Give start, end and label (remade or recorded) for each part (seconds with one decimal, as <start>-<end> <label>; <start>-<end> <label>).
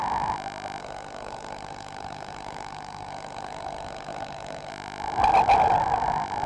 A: 0.0-0.8 recorded; 0.8-4.7 remade; 4.7-6.5 recorded